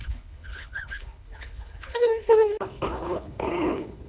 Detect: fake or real fake